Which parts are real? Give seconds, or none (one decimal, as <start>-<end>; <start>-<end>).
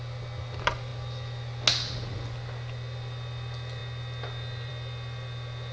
0.0-5.7